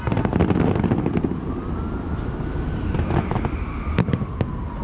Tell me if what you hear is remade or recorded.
recorded